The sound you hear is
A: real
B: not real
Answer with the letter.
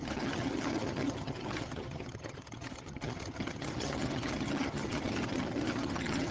B